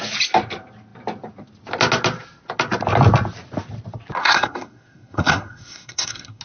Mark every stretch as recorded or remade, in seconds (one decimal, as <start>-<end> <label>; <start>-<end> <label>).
0.0-4.2 recorded; 4.2-6.4 remade